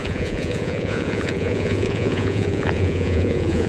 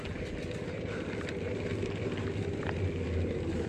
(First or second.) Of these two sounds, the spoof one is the first